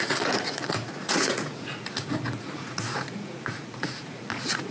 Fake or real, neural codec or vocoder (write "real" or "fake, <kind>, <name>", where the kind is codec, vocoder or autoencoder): fake, vocoder, Vocos